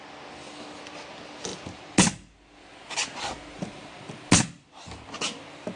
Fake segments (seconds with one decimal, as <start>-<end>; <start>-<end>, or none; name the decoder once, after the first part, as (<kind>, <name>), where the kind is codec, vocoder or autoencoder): 1.5-5.0 (vocoder, BigVGAN v2)

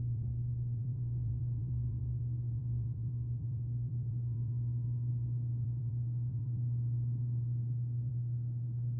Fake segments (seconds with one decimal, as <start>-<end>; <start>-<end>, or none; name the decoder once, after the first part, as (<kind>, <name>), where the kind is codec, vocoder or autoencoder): 0.0-8.1 (vocoder, BigVGAN v2)